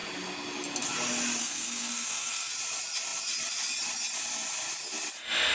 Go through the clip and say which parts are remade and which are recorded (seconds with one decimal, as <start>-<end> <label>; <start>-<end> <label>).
0.0-1.4 recorded; 1.4-2.5 remade; 2.5-5.5 recorded